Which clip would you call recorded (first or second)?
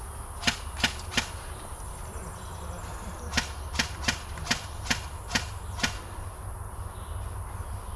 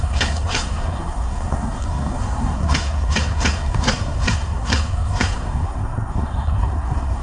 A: first